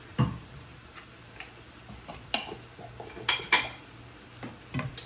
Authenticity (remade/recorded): recorded